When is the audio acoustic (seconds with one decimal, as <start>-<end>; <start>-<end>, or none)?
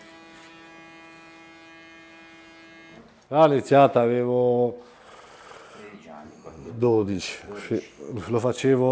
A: 0.0-6.6; 7.2-8.9